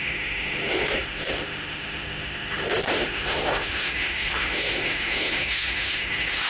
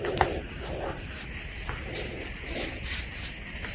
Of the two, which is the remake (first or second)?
first